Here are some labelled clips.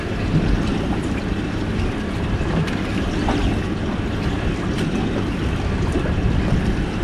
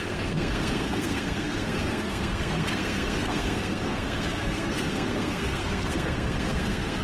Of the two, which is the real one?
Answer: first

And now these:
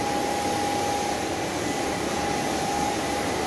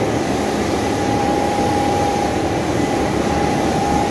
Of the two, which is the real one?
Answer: first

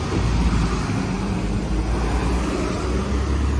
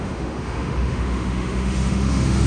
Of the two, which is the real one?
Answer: first